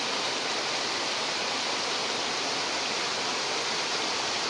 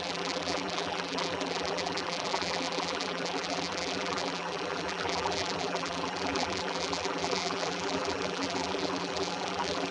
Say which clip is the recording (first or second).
first